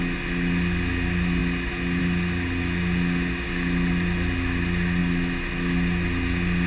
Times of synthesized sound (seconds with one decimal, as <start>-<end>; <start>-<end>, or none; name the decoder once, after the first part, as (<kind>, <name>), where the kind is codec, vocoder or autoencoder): none